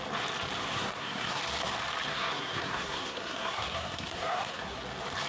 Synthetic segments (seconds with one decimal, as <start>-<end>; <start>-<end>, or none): 0.7-1.4; 2.1-4.8